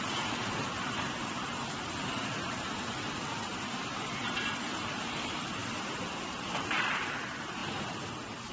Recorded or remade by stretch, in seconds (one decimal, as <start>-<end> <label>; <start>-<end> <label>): 0.0-1.5 remade; 1.5-4.4 recorded; 4.4-5.6 remade; 5.6-6.3 recorded; 6.3-7.6 remade; 7.6-8.5 recorded